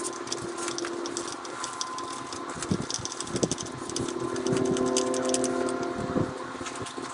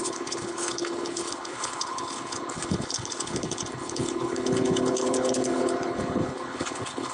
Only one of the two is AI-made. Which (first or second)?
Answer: second